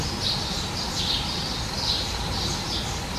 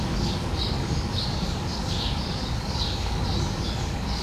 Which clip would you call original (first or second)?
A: first